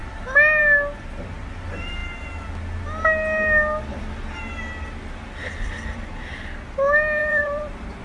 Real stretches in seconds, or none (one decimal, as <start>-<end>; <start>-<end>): 0.0-7.2